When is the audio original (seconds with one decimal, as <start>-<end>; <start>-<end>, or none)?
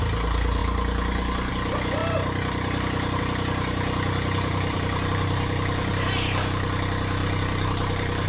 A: 0.0-4.5; 5.9-7.2